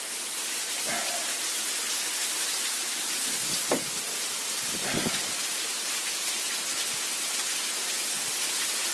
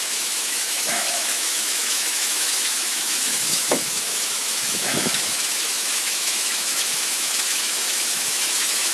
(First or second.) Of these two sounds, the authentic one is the first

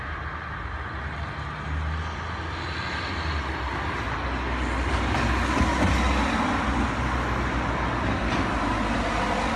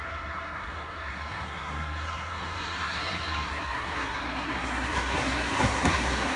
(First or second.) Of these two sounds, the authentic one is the first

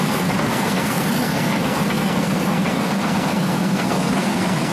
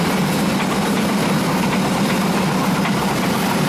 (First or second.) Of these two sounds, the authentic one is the second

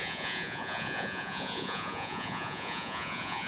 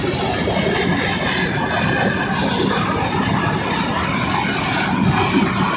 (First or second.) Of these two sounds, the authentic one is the second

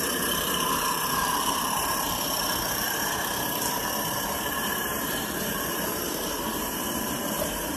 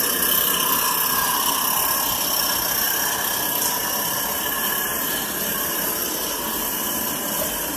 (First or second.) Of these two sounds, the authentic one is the second